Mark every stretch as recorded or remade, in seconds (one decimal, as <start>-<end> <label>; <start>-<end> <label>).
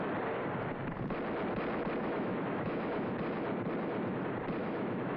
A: 0.0-2.0 recorded; 2.0-3.1 remade; 3.1-4.6 recorded; 4.6-5.2 remade